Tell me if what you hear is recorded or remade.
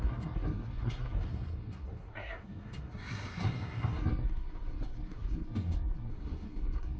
remade